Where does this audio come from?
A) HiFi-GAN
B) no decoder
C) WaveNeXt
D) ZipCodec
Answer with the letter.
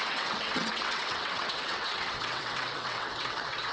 C